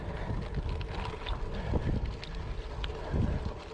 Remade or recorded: recorded